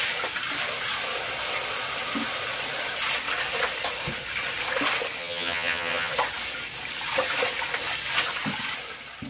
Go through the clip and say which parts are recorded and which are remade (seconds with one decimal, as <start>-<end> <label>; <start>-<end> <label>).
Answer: 0.0-5.2 recorded; 5.2-6.1 remade; 6.1-9.3 recorded